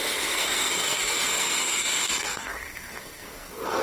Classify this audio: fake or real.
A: fake